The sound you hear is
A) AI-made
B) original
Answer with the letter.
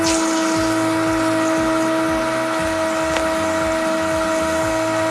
B